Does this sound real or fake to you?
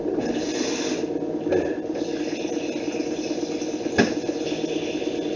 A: real